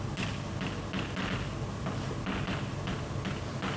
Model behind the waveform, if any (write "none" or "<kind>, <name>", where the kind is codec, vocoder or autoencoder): none